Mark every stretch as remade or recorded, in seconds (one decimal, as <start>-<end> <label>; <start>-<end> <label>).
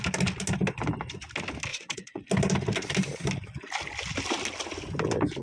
0.0-1.7 recorded; 1.7-2.2 remade; 2.2-5.4 recorded